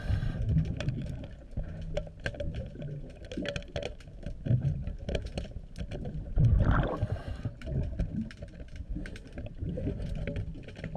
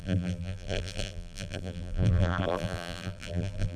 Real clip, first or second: first